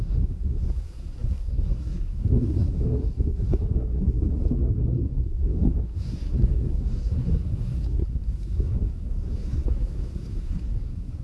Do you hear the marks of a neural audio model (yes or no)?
yes